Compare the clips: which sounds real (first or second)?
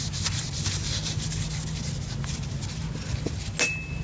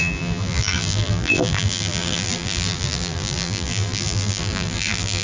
first